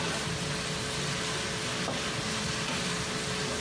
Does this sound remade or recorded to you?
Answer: recorded